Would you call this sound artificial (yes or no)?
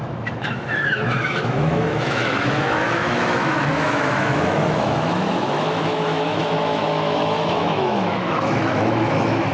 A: yes